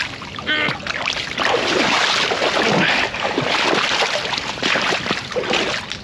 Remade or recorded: recorded